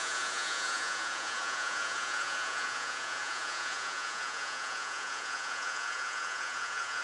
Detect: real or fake fake